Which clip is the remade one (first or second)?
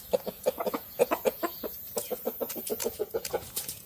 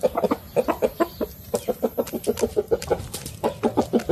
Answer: first